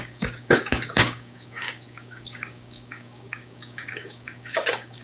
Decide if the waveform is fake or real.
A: fake